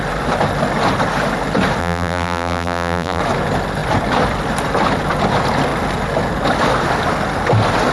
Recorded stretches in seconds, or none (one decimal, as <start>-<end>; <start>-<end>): 0.0-1.8; 3.2-7.9